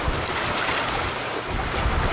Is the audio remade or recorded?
remade